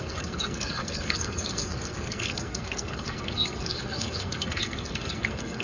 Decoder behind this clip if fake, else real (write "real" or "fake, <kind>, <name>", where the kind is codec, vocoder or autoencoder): fake, codec, SNAC